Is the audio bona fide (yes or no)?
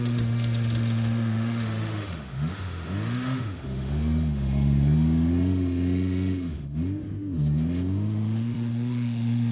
no